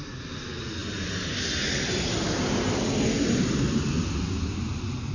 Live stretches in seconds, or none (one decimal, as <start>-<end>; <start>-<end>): 0.0-5.1